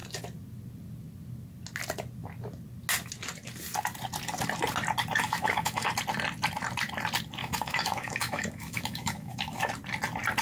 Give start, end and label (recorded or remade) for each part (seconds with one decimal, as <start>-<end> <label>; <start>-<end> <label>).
0.0-5.2 recorded; 5.2-5.9 remade; 5.9-7.4 recorded; 7.4-9.7 remade; 9.7-10.4 recorded